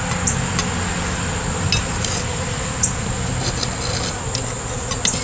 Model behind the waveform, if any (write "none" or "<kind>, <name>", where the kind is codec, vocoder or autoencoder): none